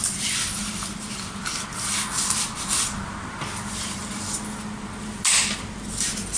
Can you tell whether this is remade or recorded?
recorded